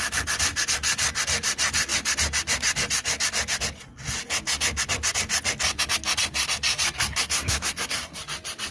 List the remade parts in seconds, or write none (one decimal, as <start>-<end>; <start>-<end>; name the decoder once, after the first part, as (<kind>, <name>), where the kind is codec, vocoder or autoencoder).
7.1-8.2 (codec, SNAC)